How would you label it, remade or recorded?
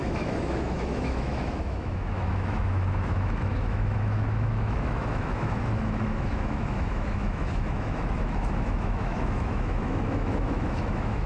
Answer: remade